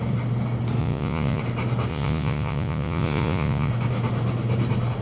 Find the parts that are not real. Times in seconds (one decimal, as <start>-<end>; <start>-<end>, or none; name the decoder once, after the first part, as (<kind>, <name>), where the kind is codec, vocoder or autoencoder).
0.8-1.4 (vocoder, Vocos); 1.9-3.7